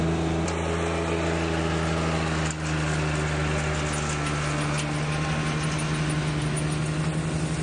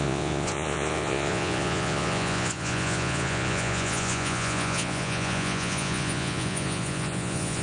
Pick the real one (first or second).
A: first